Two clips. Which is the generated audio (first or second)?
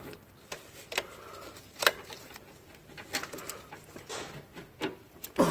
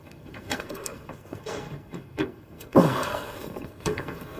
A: second